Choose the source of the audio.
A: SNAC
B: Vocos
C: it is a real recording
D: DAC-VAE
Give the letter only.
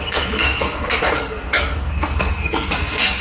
A